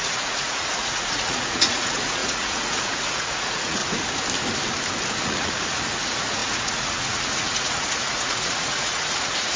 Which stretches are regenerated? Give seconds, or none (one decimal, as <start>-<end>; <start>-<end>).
0.0-3.8; 5.2-9.6